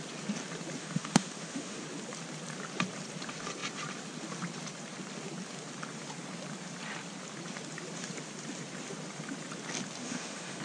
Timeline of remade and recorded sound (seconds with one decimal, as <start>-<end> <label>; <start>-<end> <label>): 0.0-0.8 recorded; 0.8-1.8 remade; 1.8-10.0 recorded; 10.0-10.6 remade